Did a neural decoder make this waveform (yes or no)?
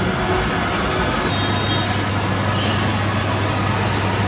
no